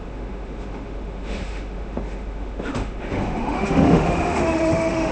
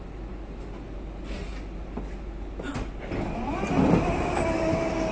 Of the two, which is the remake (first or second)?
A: first